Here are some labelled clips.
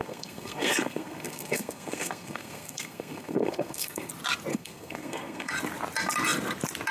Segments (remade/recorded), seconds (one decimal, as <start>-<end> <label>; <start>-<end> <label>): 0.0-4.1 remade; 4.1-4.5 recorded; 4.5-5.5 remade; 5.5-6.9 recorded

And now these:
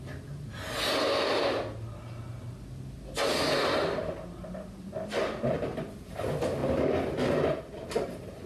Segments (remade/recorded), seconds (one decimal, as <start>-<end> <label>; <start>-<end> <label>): 0.0-8.5 recorded

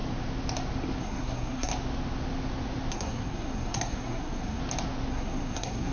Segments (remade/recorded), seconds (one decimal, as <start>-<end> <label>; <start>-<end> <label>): 0.0-1.0 recorded; 1.0-1.7 remade; 1.7-2.9 recorded; 2.9-4.6 remade; 4.6-5.1 recorded; 5.1-5.9 remade

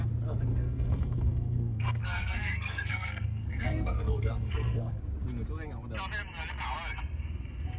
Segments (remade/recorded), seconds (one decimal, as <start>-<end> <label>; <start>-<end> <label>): 0.0-0.5 recorded; 0.5-5.0 remade; 5.0-7.8 recorded

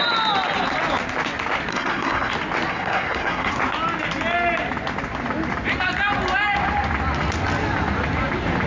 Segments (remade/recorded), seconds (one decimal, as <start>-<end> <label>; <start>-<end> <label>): 0.0-1.7 recorded; 1.7-2.3 remade; 2.3-2.7 recorded; 2.7-3.5 remade; 3.5-8.7 recorded

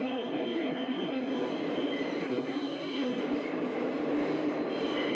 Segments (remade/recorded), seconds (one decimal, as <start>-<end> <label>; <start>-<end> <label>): 0.0-1.5 remade; 1.5-2.2 recorded; 2.2-3.2 remade; 3.2-5.1 recorded

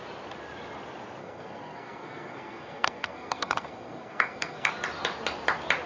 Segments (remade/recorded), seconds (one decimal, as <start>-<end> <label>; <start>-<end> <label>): 0.0-1.2 recorded; 1.2-4.7 remade; 4.7-5.9 recorded

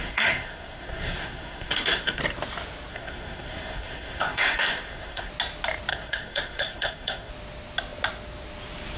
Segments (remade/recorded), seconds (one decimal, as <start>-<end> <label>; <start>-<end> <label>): 0.0-2.2 remade; 2.2-2.9 recorded; 2.9-5.3 remade; 5.3-5.9 recorded; 5.9-7.3 remade; 7.3-9.0 recorded